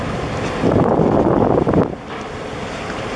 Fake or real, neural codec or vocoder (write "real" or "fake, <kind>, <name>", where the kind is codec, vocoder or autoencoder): real